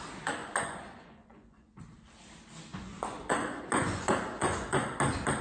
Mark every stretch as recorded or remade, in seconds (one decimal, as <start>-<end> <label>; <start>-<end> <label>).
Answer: 0.0-0.4 recorded; 0.4-1.7 remade; 1.7-2.7 recorded; 2.7-5.0 remade; 5.0-5.4 recorded